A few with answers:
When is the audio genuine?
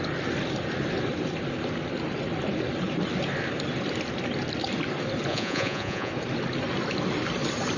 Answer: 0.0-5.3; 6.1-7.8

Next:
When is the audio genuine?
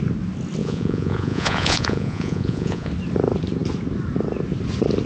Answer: 0.0-0.6; 2.9-5.1